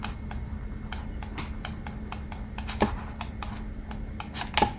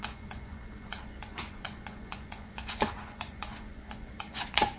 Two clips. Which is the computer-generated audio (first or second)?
second